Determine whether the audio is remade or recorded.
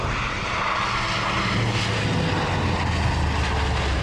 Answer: recorded